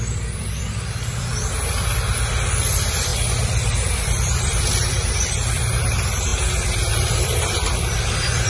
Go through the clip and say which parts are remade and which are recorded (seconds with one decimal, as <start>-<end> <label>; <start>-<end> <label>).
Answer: 0.0-1.3 remade; 1.3-2.7 recorded; 2.7-6.3 remade; 6.3-6.9 recorded; 6.9-8.5 remade